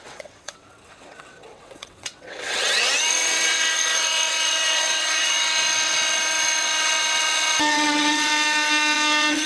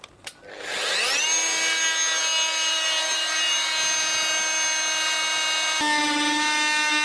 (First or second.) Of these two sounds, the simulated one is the first